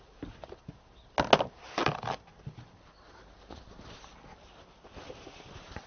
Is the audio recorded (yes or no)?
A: yes